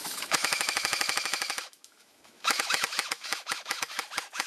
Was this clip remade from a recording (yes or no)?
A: yes